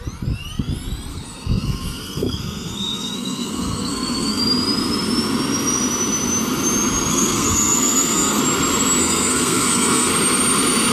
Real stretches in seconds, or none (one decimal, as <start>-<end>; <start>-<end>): 0.0-1.1; 4.4-7.1; 8.4-9.0; 10.1-10.9

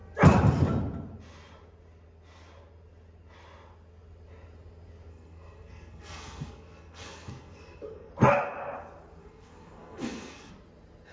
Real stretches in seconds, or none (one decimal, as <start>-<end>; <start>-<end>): 0.0-5.1; 8.1-9.2; 10.5-11.1

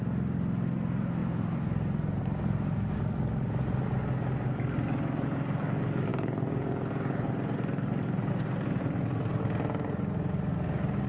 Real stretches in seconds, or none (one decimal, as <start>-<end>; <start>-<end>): 0.0-1.2; 2.9-6.1; 8.3-11.1

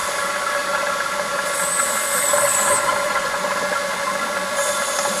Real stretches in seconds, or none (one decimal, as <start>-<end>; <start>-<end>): 0.0-2.6; 3.4-5.2